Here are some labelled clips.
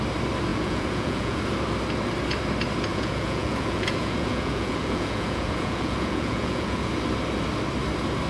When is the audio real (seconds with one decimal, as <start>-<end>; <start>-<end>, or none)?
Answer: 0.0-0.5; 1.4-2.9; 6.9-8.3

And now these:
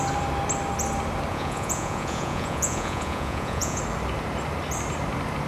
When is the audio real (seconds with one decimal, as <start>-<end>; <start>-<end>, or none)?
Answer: 0.0-1.3; 3.8-5.5

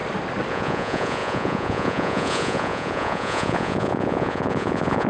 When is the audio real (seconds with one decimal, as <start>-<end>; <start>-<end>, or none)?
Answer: 0.0-0.5

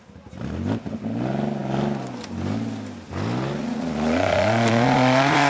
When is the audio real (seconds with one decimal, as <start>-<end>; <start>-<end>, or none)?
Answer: 0.0-3.6

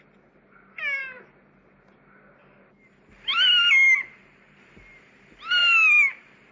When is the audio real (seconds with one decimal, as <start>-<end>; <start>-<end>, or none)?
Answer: 0.0-6.5